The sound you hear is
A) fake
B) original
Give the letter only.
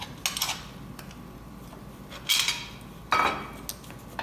B